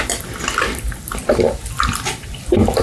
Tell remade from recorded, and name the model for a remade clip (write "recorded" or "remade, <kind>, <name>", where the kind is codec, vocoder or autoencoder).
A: recorded